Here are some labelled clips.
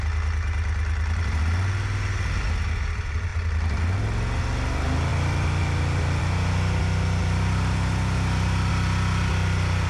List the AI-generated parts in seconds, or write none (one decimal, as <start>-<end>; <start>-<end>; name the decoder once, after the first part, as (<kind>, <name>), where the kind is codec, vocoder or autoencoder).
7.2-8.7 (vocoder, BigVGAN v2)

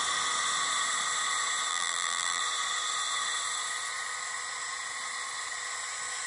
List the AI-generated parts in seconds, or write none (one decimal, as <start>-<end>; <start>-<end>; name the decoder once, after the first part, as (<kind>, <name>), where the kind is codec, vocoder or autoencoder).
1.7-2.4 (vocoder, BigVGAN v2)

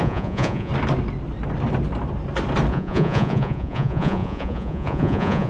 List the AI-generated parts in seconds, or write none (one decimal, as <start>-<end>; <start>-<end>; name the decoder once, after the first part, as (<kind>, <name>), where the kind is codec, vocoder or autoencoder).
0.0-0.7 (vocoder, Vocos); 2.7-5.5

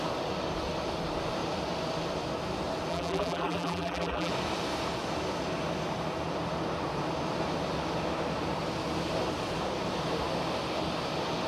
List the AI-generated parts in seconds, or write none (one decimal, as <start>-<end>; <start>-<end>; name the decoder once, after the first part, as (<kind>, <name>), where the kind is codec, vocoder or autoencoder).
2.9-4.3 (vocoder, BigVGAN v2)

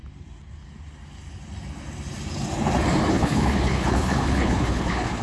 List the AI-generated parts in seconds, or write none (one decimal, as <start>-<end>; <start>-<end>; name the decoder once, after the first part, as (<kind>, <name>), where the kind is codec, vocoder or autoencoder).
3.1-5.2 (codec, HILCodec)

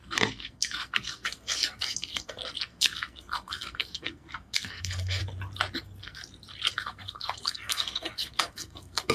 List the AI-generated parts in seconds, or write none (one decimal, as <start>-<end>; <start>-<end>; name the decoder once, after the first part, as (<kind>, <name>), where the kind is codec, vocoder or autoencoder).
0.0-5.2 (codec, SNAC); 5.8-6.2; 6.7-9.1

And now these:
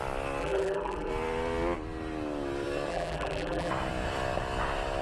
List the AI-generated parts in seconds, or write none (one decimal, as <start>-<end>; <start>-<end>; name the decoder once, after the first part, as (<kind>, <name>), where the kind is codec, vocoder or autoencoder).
0.4-1.1 (vocoder, BigVGAN v2); 2.9-3.7